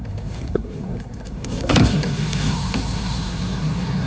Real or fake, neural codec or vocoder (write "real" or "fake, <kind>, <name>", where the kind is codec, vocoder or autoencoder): fake, codec, SNAC